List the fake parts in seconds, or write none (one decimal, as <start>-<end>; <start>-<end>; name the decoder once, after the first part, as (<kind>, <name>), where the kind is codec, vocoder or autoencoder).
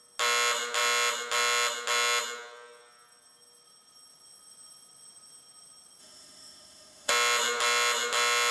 6.0-7.1 (autoencoder, DAC-VAE)